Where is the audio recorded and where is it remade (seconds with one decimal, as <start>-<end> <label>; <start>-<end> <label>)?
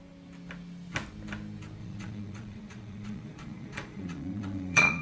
0.0-1.8 recorded; 1.8-5.0 remade